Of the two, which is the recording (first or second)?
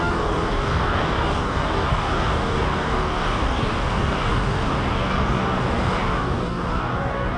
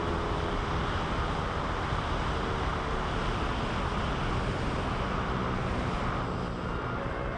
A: second